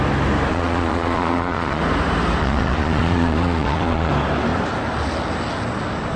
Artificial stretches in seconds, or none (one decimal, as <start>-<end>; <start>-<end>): 0.5-1.8; 2.4-4.1